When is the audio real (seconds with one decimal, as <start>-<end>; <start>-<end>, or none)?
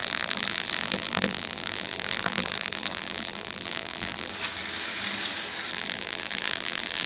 4.3-5.7